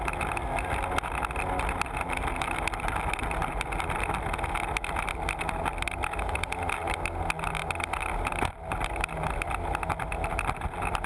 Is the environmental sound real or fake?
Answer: real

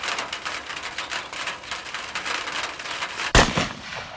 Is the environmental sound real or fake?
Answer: real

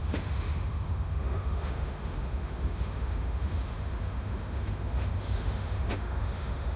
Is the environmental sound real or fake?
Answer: fake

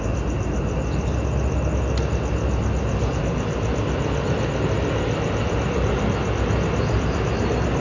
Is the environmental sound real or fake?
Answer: real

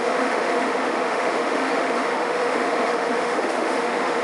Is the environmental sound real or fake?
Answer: fake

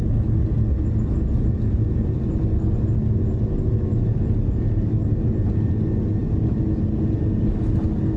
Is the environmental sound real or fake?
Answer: real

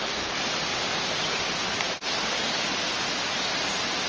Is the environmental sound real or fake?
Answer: real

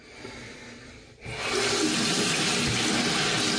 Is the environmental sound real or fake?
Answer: real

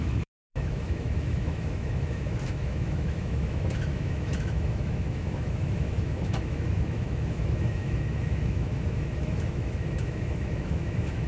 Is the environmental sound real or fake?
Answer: fake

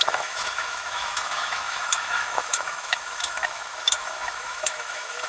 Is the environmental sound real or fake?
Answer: fake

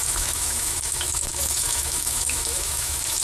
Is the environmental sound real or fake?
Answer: fake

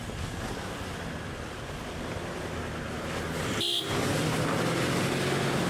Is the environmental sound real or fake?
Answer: real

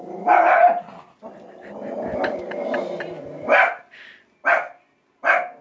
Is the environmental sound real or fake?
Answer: real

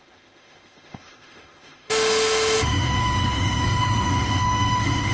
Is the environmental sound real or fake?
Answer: fake